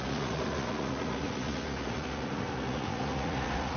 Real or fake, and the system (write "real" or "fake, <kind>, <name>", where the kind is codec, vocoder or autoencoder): fake, vocoder, Vocos